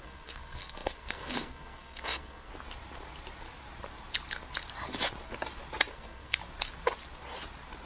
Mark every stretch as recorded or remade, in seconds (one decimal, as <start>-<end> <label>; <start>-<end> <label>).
0.0-2.5 remade; 2.5-5.9 recorded; 5.9-6.4 remade; 6.4-7.9 recorded